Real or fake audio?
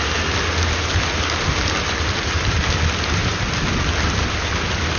real